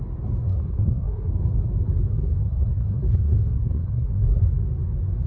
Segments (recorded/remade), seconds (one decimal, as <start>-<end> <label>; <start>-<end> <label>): 0.0-0.5 recorded; 0.5-1.3 remade; 1.3-2.1 recorded; 2.1-4.4 remade; 4.4-5.3 recorded

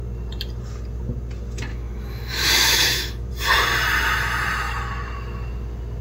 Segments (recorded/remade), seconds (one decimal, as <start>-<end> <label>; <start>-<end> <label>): 0.0-1.7 recorded; 1.7-3.3 remade; 3.3-6.0 recorded

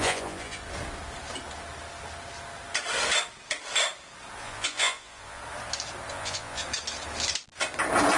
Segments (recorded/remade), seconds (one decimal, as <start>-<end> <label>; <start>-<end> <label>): 0.0-0.6 remade; 0.6-4.4 recorded; 4.4-5.4 remade; 5.4-6.1 recorded; 6.1-6.6 remade; 6.6-8.2 recorded

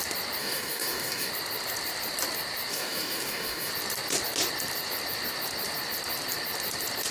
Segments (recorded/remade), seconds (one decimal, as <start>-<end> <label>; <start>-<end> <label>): 0.0-0.4 recorded; 0.4-1.3 remade; 1.3-2.7 recorded; 2.7-3.7 remade; 3.7-7.1 recorded

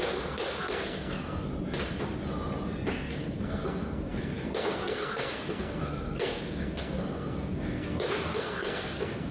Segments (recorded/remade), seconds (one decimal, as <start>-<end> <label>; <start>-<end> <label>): 0.0-1.5 remade; 1.5-2.9 recorded; 2.9-9.3 remade

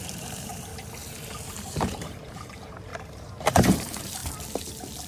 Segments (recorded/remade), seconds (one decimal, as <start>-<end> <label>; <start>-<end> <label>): 0.0-0.7 remade; 0.7-1.4 recorded; 1.4-2.9 remade; 2.9-3.5 recorded; 3.5-4.2 remade; 4.2-5.1 recorded